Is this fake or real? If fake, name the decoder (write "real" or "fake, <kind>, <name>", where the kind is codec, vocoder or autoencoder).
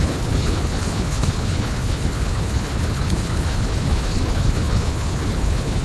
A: fake, codec, HILCodec